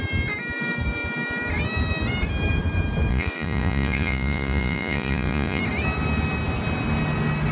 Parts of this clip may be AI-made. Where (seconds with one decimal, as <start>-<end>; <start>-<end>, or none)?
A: 3.1-5.6